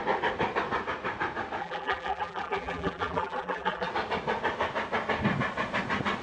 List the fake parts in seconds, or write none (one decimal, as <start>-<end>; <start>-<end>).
1.6-3.9